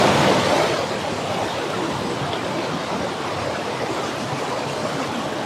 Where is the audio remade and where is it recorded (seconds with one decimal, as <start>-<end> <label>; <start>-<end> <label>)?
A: 0.0-2.8 recorded; 2.8-4.4 remade; 4.4-5.5 recorded